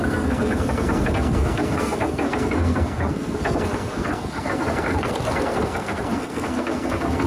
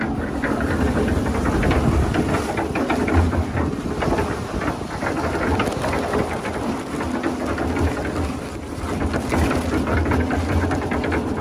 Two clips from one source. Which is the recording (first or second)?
second